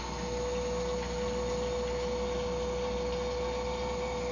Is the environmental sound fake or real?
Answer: real